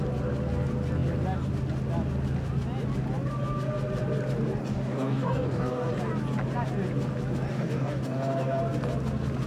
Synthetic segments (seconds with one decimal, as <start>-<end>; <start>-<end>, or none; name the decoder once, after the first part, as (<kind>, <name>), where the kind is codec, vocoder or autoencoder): 4.6-5.9 (codec, DAC); 7.5-8.6